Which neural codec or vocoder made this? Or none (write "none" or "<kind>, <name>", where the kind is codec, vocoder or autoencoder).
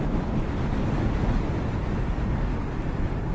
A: none